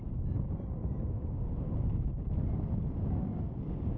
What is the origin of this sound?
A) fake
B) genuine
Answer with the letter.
B